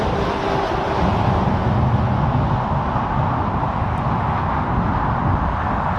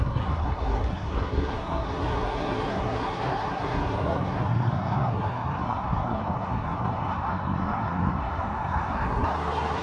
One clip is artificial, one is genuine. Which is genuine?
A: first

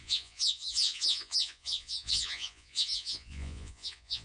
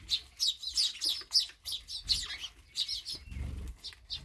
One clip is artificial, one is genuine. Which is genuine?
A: second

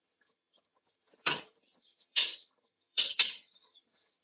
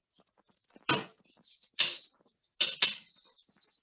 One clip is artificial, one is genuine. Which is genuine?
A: second